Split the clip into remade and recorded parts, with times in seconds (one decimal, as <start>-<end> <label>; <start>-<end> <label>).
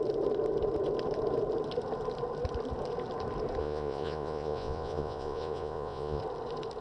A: 0.0-3.6 recorded; 3.6-6.2 remade; 6.2-6.8 recorded